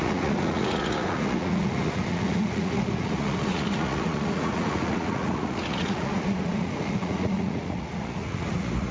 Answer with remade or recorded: remade